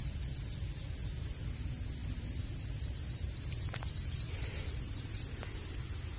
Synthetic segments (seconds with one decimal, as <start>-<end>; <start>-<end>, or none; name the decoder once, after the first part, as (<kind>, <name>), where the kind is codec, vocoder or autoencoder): 2.0-5.2 (vocoder, BigVGAN v2)